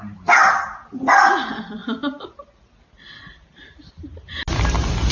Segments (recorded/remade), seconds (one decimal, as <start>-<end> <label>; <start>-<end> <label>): 0.0-5.1 recorded